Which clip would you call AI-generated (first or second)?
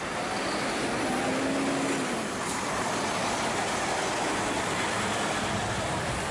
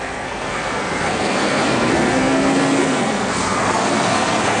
second